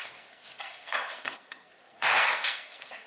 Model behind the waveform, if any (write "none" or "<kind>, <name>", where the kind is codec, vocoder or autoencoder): codec, SNAC